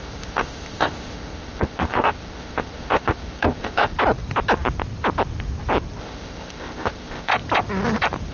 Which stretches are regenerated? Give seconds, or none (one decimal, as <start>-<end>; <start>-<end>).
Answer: 0.0-3.9; 6.0-7.3